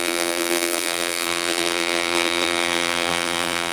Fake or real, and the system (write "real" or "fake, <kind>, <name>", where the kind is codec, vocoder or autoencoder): fake, vocoder, BigVGAN v2